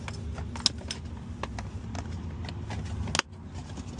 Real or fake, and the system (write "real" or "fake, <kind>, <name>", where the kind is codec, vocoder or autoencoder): real